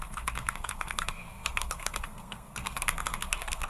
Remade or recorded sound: remade